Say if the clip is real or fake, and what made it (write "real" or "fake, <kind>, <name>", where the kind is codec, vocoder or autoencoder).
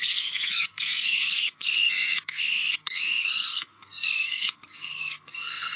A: fake, codec, SNAC